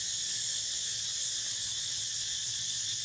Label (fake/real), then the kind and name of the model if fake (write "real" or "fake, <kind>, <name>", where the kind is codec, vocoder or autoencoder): real